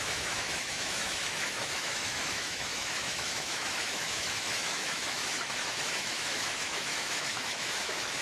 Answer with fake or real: fake